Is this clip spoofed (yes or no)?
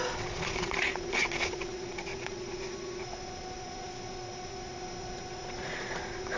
yes